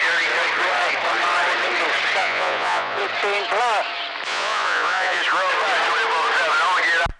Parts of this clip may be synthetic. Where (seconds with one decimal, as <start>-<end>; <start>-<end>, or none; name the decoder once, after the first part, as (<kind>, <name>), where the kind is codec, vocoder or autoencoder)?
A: 2.2-3.0 (vocoder, Vocos); 4.3-5.2

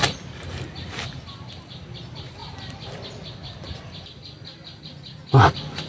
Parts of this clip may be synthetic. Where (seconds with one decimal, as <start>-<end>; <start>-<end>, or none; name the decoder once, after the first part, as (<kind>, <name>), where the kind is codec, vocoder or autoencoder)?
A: none

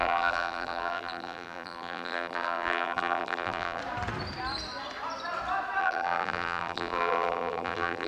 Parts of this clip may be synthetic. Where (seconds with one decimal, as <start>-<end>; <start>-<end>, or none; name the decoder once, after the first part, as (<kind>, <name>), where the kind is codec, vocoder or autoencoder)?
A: 0.0-3.8 (vocoder, BigVGAN v2); 5.8-8.1